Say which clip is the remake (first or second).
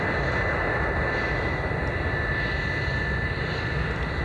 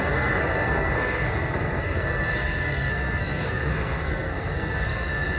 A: second